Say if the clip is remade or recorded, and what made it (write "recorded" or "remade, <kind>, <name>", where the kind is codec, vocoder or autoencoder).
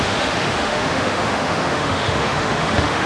remade, autoencoder, DAC-VAE